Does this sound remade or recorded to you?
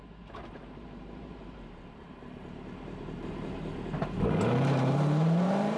remade